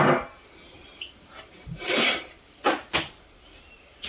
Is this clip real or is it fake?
real